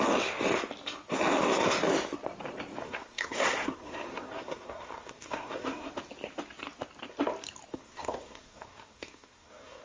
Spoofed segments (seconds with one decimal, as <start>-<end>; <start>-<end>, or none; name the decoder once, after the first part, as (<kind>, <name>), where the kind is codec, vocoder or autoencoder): 2.8-5.9 (codec, SNAC); 7.7-9.8